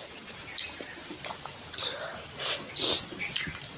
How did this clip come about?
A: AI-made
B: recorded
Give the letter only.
B